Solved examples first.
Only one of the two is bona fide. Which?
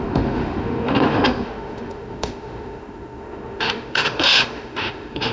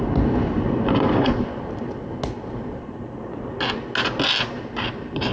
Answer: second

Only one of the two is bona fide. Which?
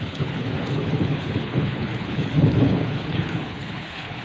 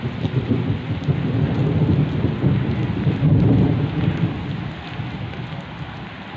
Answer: second